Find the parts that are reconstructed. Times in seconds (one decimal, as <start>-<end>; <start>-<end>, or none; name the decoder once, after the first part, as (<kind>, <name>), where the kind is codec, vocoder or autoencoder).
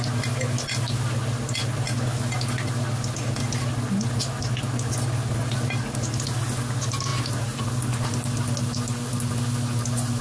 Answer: none